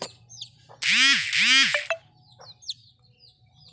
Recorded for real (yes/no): yes